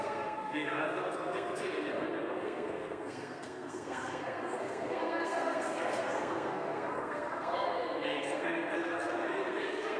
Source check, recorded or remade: remade